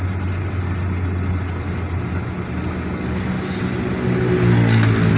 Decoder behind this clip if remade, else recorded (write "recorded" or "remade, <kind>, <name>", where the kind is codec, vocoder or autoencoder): recorded